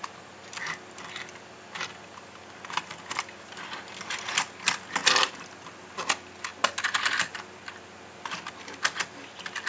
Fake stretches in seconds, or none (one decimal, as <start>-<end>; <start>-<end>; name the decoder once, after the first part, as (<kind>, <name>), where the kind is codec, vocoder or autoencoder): none